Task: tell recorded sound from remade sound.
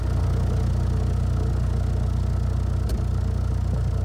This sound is recorded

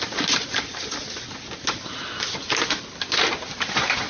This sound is recorded